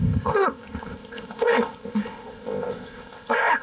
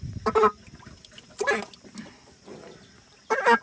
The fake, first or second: first